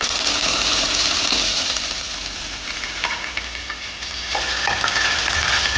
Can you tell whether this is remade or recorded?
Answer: recorded